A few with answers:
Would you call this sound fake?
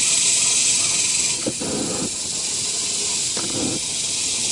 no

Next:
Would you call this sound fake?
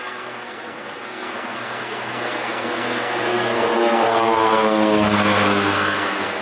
yes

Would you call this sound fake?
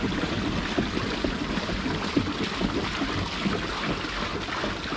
no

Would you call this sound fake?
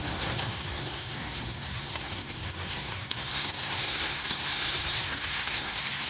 yes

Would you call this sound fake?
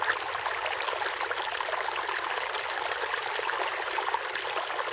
no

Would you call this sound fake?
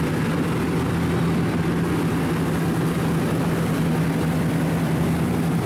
no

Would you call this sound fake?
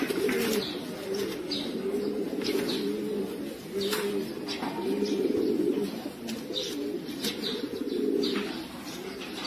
no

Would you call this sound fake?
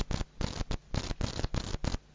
no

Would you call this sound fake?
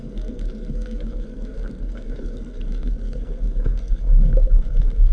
yes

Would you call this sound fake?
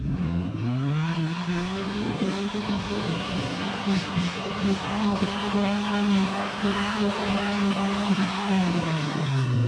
yes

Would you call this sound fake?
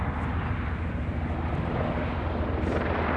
no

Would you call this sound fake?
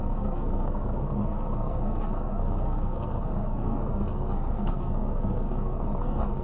yes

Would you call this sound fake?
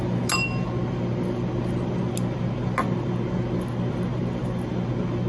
no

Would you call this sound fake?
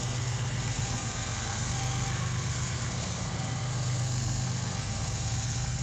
yes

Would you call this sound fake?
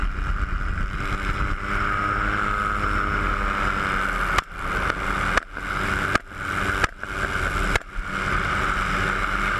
no